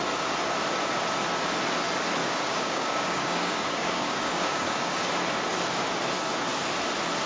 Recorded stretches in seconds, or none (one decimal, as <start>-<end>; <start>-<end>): 0.0-2.2; 5.1-7.3